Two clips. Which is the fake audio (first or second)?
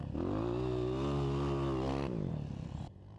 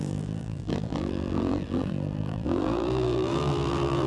second